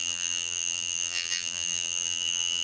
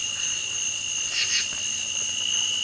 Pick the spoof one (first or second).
first